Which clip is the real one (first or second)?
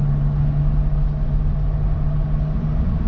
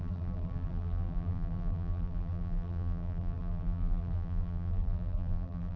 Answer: first